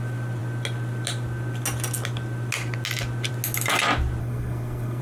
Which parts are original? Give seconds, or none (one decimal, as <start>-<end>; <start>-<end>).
0.0-4.2